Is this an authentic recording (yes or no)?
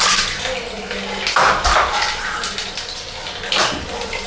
yes